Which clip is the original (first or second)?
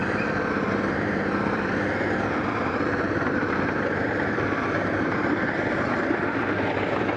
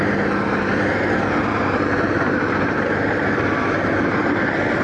second